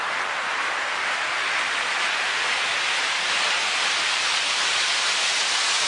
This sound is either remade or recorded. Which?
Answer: remade